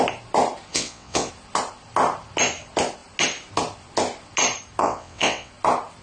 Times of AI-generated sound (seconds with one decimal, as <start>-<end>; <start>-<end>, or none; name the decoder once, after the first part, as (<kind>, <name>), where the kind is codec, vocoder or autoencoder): 0.7-1.3 (vocoder, WaveNeXt); 4.8-5.5

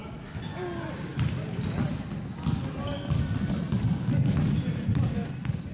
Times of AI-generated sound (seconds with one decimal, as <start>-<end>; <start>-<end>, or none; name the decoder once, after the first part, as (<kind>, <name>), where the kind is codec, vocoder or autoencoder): none